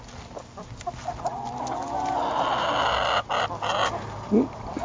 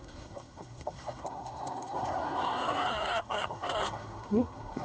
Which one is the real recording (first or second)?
first